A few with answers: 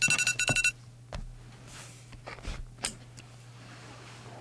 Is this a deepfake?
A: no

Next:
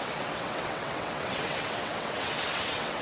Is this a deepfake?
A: yes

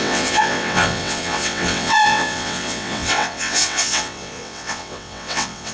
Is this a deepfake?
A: yes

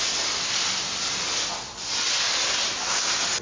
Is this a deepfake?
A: no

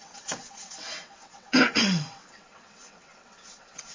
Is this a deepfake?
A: yes